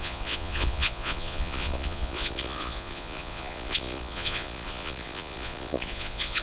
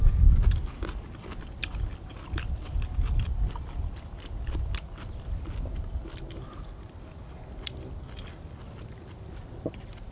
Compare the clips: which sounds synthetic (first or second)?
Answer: first